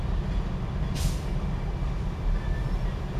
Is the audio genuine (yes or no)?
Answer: yes